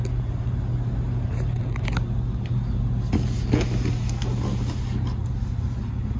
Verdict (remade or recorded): recorded